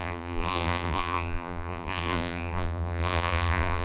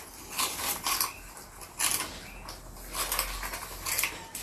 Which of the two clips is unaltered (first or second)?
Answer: second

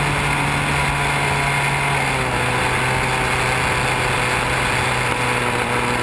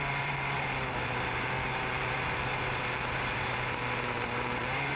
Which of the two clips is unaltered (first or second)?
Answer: first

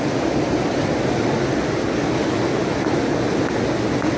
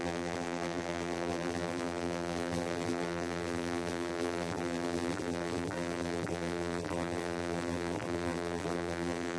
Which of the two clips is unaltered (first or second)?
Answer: first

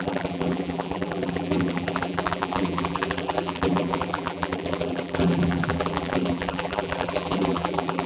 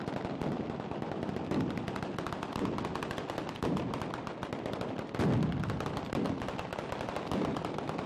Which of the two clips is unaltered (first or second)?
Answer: second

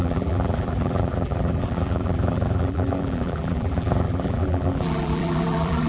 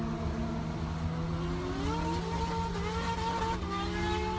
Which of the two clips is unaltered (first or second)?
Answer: second